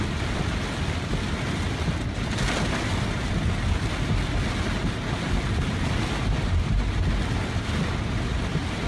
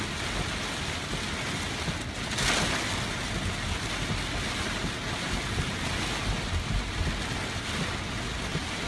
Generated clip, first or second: first